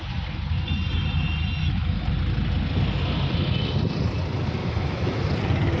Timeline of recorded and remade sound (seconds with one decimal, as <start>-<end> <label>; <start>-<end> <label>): 0.0-1.6 recorded; 1.6-2.1 remade; 2.1-4.6 recorded; 4.6-5.2 remade; 5.2-5.8 recorded